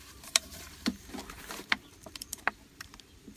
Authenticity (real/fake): fake